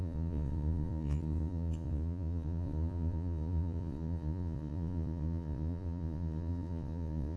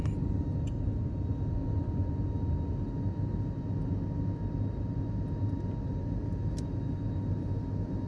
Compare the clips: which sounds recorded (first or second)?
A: second